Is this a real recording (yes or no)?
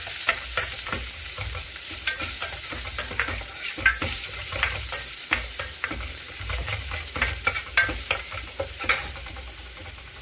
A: no